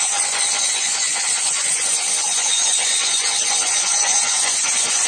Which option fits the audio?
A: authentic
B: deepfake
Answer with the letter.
B